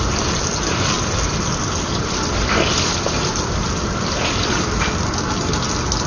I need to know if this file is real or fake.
real